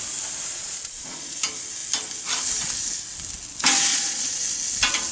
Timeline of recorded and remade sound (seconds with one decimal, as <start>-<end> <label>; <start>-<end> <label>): 0.0-0.5 recorded; 0.5-1.4 remade; 1.4-3.9 recorded; 3.9-4.4 remade; 4.4-5.1 recorded